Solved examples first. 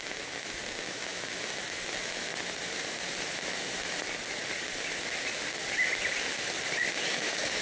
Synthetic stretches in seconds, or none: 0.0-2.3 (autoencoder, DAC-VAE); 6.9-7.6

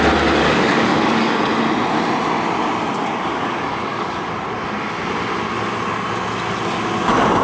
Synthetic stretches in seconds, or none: 0.4-1.5 (codec, DAC); 3.0-4.2

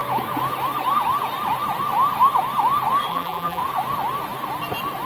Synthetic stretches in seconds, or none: 3.1-3.6 (vocoder, BigVGAN v2)

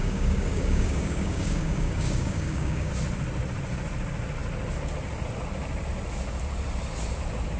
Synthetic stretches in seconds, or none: 0.0-2.9 (codec, DAC)